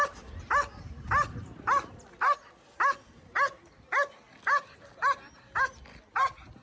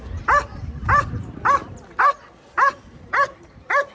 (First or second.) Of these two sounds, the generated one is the second